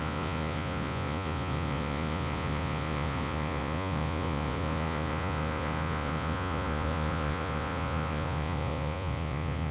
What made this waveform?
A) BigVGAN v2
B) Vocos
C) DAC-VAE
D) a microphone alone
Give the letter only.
B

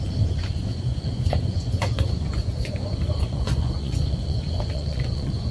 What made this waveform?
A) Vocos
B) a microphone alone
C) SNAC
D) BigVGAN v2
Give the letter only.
A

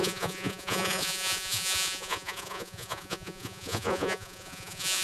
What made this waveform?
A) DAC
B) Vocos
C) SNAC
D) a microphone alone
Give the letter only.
B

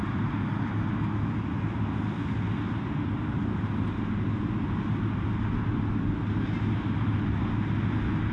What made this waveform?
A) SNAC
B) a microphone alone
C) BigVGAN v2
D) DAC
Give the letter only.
B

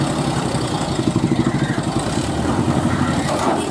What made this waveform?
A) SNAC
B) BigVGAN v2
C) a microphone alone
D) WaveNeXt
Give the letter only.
B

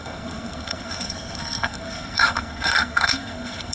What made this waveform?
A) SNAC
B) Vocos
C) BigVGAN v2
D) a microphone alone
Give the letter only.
A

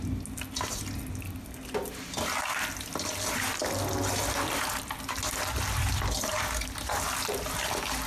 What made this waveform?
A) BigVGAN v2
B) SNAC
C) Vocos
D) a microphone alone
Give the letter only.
D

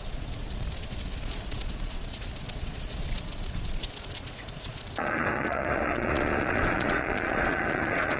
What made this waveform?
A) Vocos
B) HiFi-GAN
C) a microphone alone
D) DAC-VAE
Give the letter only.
A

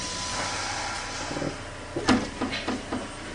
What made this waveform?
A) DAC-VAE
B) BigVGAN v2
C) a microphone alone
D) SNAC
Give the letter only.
C